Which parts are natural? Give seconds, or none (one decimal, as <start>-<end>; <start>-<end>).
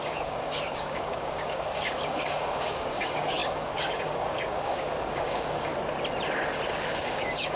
5.7-6.9